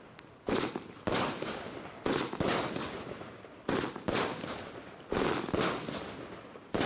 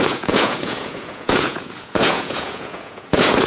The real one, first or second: first